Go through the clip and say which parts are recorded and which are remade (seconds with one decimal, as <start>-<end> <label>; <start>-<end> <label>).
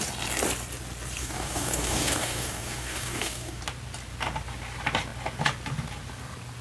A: 0.0-1.2 recorded; 1.2-3.6 remade; 3.6-6.6 recorded